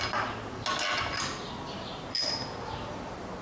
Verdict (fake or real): real